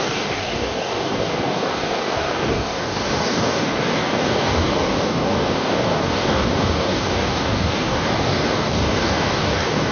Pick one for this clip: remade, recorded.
remade